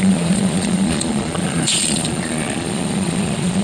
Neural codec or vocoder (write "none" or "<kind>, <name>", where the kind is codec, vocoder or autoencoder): vocoder, Vocos